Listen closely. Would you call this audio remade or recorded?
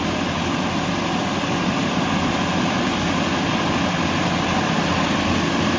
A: recorded